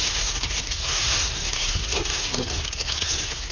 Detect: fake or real fake